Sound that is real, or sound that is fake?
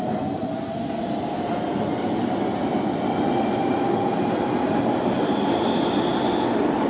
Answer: real